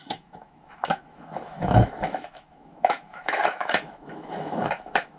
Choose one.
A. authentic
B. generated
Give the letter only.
B